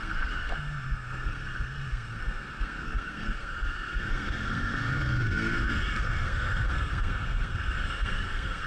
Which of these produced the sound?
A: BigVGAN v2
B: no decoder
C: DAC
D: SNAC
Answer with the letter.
D